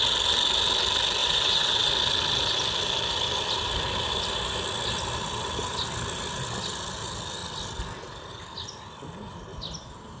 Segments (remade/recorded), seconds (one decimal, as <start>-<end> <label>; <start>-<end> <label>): 0.0-1.2 recorded; 1.2-1.9 remade; 1.9-10.2 recorded